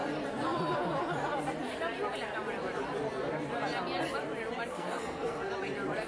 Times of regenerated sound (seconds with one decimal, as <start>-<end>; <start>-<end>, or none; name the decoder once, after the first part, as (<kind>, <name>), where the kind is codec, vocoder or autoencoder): 4.7-5.5 (codec, SNAC)